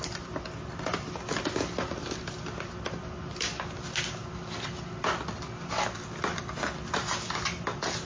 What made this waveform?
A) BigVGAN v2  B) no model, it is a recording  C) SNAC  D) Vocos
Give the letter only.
B